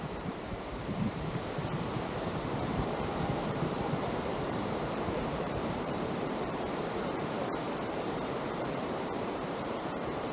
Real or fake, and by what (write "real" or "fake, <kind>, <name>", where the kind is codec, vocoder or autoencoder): fake, vocoder, BigVGAN v2